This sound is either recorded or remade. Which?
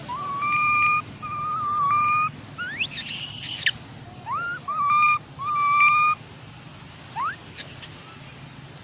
recorded